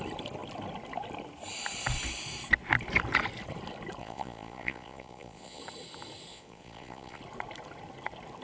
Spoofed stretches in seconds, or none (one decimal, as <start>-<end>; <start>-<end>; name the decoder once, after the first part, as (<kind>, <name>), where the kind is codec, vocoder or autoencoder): 4.0-5.6 (vocoder, Vocos); 6.3-7.2